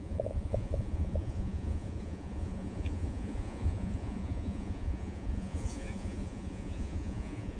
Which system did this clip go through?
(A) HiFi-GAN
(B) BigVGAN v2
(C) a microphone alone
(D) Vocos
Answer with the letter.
D